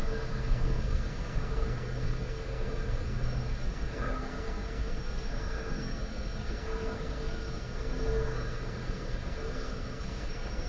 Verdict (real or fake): fake